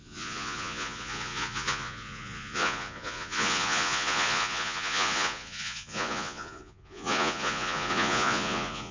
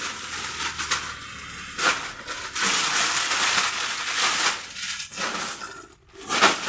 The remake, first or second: first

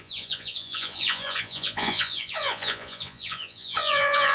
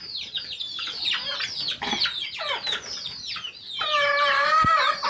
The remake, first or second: first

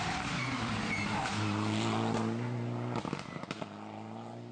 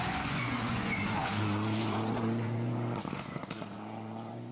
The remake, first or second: second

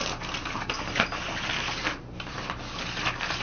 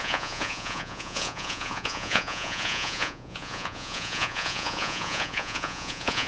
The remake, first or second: second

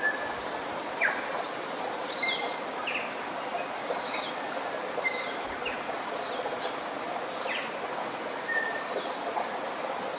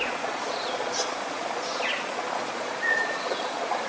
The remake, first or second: second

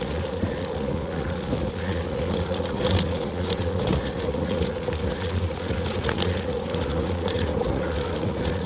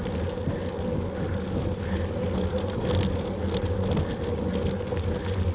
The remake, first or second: first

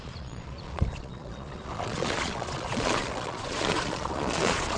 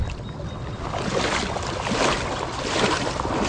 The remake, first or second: first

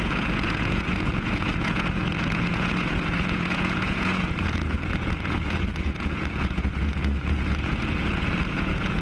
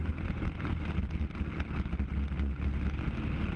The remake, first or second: first